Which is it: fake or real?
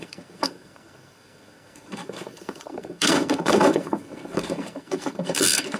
fake